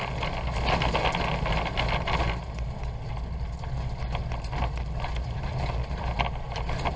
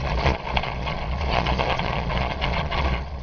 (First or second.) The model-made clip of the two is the second